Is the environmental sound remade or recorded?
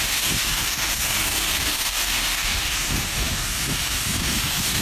remade